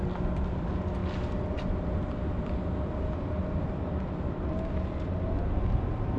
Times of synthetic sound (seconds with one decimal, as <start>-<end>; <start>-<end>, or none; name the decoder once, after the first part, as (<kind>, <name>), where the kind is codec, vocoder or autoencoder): none